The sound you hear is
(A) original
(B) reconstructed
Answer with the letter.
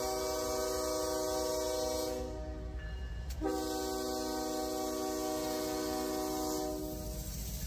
A